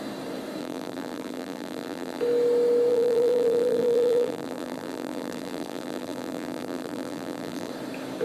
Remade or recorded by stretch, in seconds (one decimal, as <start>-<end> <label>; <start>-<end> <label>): 0.0-0.6 recorded; 0.6-2.2 remade; 2.2-2.9 recorded; 2.9-7.7 remade; 7.7-8.2 recorded